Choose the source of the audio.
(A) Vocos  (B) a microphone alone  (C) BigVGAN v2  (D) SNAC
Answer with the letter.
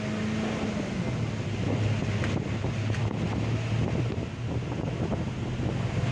B